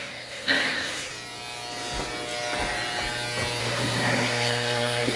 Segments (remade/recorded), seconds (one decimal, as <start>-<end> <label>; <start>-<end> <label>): 0.0-1.1 remade; 1.1-3.6 recorded; 3.6-5.2 remade